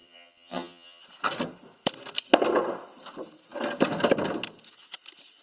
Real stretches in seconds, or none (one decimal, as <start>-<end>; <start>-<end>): 1.0-5.4